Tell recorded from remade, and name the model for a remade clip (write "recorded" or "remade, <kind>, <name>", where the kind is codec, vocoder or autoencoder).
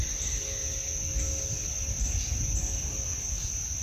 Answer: recorded